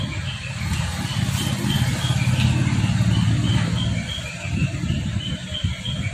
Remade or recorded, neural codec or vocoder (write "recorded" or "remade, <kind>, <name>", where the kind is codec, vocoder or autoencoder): recorded